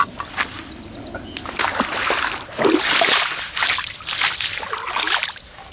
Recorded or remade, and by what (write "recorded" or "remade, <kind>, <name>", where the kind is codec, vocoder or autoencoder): recorded